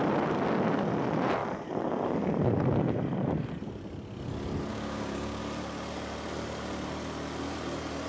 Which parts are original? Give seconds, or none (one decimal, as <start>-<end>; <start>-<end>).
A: 0.0-4.7; 5.4-8.1